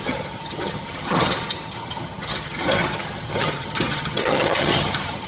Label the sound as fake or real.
fake